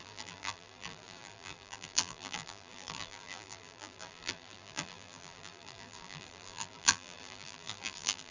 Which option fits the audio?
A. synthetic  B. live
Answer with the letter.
A